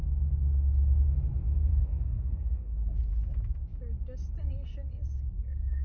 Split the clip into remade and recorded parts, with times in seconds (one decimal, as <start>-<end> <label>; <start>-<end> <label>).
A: 0.0-1.7 recorded; 1.7-2.7 remade; 2.7-5.8 recorded